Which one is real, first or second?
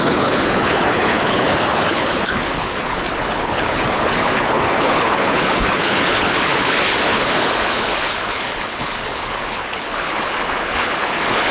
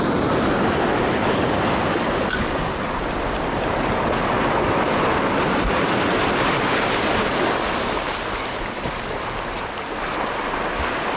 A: second